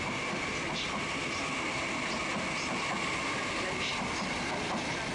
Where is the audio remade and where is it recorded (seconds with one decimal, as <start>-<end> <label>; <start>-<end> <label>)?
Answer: 0.0-5.1 recorded

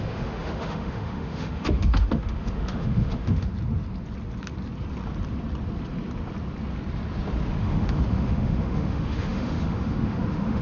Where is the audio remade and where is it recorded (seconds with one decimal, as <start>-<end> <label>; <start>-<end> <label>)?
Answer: 0.0-3.5 remade; 3.5-7.6 recorded; 7.6-10.6 remade

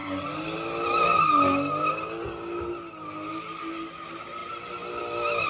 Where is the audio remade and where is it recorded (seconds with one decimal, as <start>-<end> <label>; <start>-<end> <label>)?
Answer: 0.0-5.5 recorded

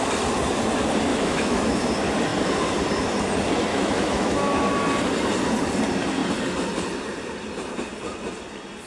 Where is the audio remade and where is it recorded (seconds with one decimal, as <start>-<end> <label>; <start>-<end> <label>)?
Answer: 0.0-1.1 recorded; 1.1-1.9 remade; 1.9-3.7 recorded; 3.7-4.7 remade; 4.7-8.9 recorded

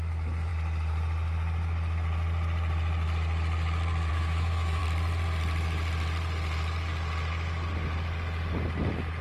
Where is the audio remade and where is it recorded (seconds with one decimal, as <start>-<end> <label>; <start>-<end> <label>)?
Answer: 0.0-0.5 remade; 0.5-4.1 recorded; 4.1-4.8 remade; 4.8-9.2 recorded

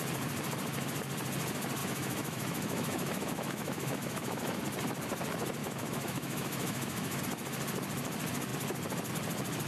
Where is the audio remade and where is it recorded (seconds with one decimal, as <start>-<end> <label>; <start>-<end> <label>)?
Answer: 0.0-1.8 recorded; 1.8-4.6 remade; 4.6-5.6 recorded; 5.6-7.2 remade; 7.2-9.7 recorded